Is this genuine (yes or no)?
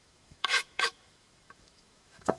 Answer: no